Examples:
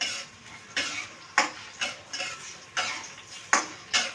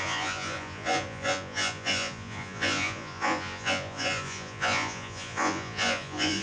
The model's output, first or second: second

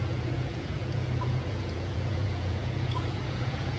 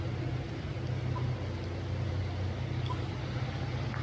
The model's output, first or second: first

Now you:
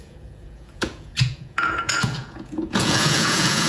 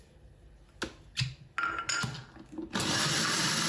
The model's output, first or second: first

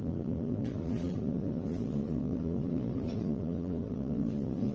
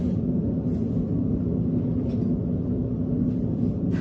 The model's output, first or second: first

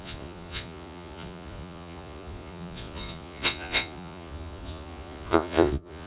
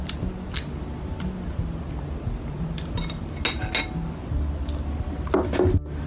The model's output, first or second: first